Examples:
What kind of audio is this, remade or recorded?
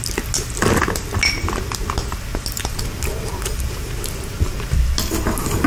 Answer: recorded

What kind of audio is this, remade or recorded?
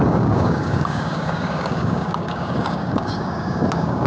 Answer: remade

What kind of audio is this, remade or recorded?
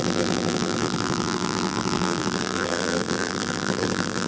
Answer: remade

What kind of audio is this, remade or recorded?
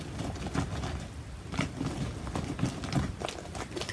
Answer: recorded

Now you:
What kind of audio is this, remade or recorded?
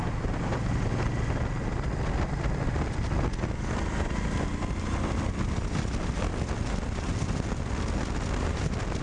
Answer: recorded